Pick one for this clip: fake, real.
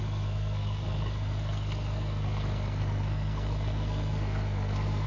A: fake